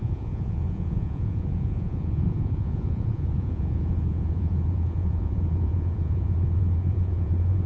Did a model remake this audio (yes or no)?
yes